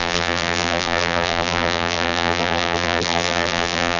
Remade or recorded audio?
remade